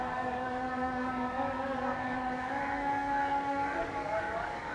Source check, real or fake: fake